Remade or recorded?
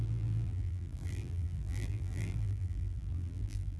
remade